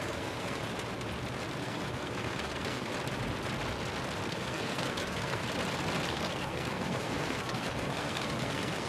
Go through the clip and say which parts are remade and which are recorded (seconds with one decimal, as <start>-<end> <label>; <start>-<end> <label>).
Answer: 0.0-0.6 remade; 0.6-1.6 recorded; 1.6-2.9 remade; 2.9-4.3 recorded; 4.3-5.4 remade; 5.4-6.1 recorded; 6.1-8.9 remade